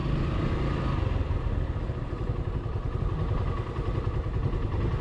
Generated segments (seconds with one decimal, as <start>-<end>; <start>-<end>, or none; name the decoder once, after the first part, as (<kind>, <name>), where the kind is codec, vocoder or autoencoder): none

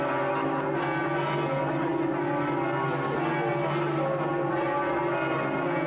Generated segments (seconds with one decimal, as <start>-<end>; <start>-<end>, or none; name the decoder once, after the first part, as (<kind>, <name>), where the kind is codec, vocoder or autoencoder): none

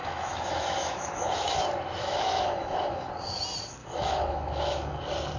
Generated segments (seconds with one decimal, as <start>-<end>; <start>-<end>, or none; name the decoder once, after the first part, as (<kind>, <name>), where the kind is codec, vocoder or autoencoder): 0.0-1.6 (autoencoder, DAC-VAE); 2.0-3.1; 3.8-5.0